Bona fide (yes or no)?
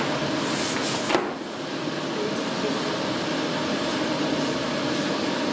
yes